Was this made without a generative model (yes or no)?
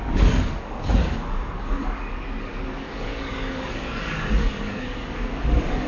no